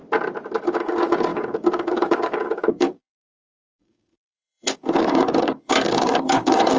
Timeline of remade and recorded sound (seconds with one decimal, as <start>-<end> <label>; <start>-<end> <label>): 0.0-0.6 recorded; 0.6-6.8 remade